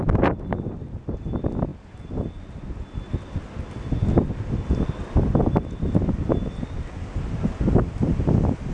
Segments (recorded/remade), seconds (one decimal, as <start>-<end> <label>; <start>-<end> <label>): 0.0-8.7 recorded